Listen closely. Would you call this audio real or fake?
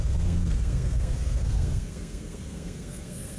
fake